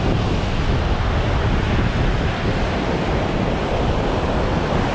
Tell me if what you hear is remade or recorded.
recorded